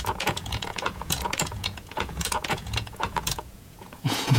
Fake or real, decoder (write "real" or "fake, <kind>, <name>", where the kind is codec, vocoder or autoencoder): fake, vocoder, Vocos